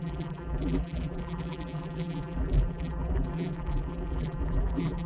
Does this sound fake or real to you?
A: fake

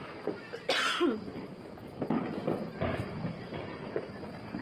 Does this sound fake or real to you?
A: real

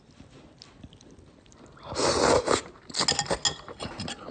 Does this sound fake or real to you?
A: real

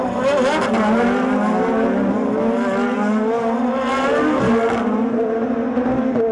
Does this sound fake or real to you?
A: real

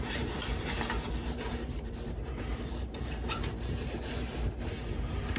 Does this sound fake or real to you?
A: fake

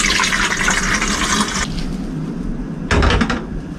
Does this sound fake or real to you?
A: real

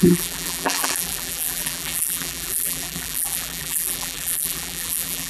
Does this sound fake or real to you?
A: fake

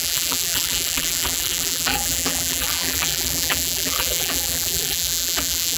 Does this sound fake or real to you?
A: fake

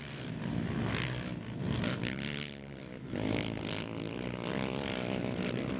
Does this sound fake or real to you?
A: real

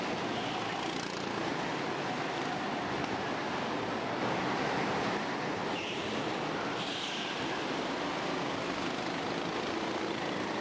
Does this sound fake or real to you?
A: fake